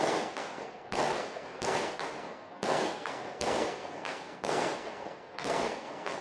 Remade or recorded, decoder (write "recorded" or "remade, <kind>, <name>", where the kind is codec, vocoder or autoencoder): remade, codec, SNAC